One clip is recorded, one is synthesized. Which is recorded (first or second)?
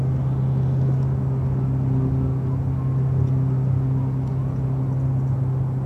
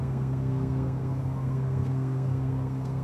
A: first